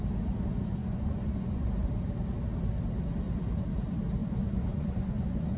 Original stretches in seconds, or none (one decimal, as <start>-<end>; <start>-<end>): 0.0-0.8; 1.9-4.2